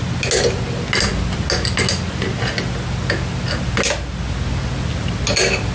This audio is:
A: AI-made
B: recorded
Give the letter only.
B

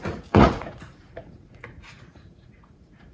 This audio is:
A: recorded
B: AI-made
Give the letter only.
B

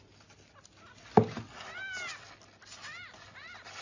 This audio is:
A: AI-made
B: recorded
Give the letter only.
B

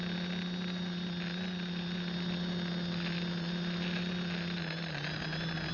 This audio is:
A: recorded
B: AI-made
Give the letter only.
A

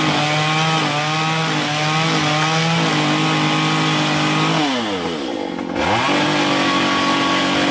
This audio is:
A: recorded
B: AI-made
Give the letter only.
A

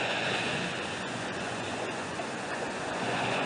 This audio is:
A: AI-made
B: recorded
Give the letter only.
A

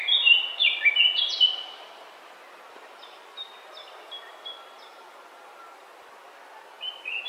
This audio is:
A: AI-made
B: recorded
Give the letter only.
B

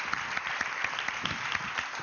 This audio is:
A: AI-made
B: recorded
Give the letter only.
B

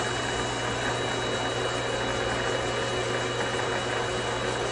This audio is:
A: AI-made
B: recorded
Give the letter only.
B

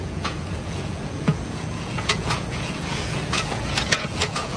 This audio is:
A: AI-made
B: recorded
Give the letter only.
A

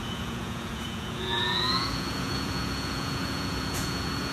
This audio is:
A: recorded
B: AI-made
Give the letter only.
B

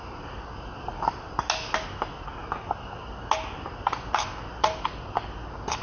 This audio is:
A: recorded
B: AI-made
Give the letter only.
A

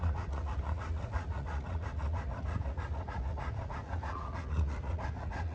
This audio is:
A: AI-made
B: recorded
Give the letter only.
A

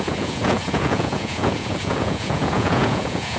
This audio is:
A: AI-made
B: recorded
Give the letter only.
A